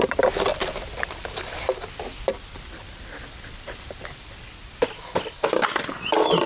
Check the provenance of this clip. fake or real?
real